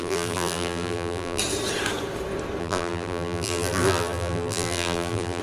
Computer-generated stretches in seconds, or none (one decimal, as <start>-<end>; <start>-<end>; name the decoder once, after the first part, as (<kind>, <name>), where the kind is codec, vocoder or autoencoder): 0.0-1.4 (vocoder, BigVGAN v2); 2.6-5.4